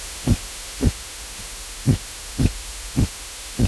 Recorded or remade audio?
remade